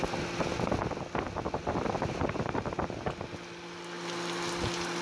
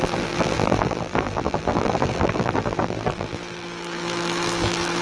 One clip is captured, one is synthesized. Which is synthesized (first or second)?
second